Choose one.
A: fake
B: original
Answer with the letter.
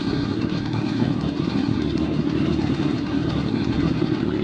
A